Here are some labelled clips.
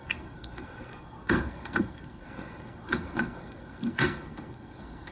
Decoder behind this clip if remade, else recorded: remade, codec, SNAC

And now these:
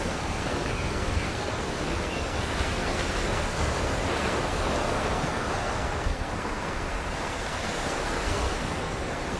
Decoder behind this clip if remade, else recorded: remade, codec, SNAC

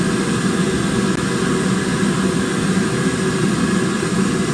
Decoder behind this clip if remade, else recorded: recorded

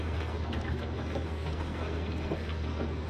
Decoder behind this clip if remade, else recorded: remade, codec, SNAC